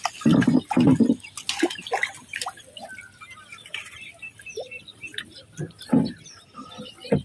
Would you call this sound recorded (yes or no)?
yes